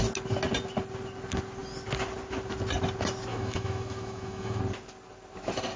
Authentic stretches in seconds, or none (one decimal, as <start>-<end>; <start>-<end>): 0.0-3.3; 4.6-5.8